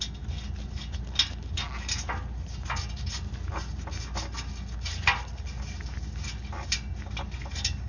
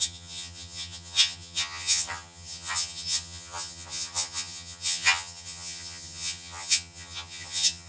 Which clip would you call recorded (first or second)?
first